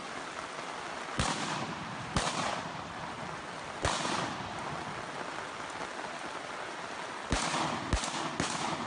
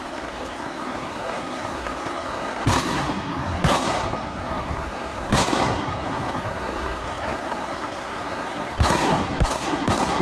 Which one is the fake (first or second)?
second